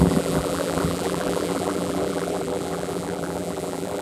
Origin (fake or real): fake